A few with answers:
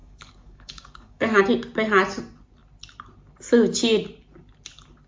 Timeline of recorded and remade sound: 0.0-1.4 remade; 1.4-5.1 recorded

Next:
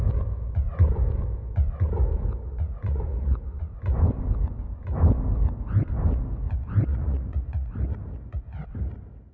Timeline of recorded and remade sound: 0.0-2.4 recorded; 2.4-3.8 remade; 3.8-6.9 recorded; 6.9-7.8 remade; 7.8-9.3 recorded